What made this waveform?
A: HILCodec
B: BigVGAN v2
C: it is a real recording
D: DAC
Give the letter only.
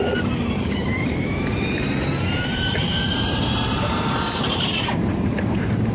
B